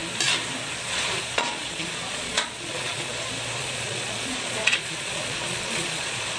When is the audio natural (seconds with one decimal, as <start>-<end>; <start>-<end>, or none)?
0.0-0.8; 3.1-3.6